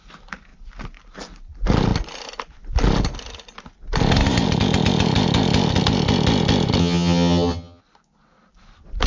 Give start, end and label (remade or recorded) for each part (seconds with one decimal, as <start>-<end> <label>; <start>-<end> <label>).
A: 0.0-6.8 recorded; 6.8-7.8 remade; 7.8-9.1 recorded